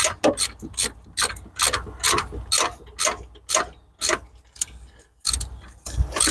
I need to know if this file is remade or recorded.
recorded